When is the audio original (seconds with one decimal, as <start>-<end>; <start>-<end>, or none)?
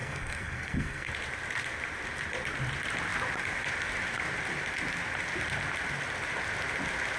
1.1-7.2